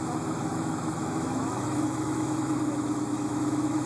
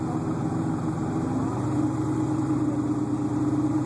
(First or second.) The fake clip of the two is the first